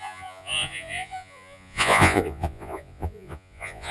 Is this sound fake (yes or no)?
yes